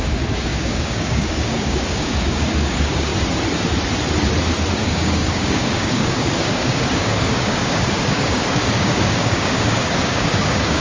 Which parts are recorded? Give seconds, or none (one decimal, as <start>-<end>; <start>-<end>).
3.1-4.7